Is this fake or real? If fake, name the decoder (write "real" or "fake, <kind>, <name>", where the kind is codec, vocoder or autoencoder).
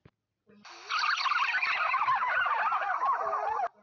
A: real